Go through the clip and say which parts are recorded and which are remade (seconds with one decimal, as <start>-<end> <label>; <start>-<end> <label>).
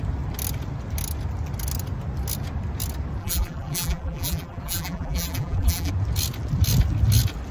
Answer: 0.0-3.2 recorded; 3.2-5.9 remade; 5.9-7.5 recorded